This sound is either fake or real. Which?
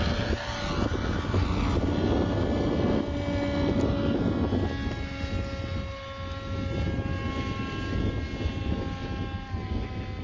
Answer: real